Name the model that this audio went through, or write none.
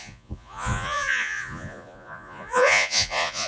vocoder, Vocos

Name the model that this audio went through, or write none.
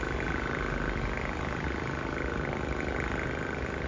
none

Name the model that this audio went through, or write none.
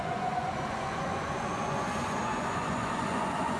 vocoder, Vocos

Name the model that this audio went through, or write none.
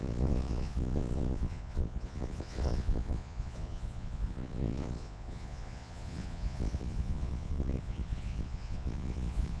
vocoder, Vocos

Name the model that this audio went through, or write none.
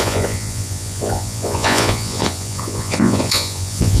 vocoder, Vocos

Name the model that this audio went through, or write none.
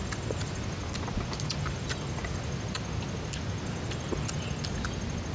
none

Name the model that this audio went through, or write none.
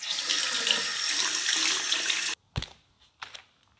none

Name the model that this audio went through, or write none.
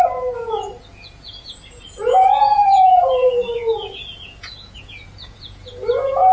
vocoder, Vocos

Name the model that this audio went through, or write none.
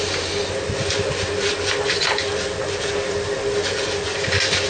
none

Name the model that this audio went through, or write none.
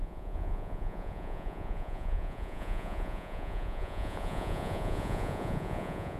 vocoder, Vocos